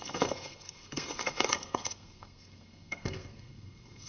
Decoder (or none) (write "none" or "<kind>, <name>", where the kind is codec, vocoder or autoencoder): codec, SNAC